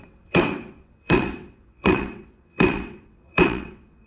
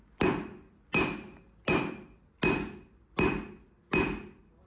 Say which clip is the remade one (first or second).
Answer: first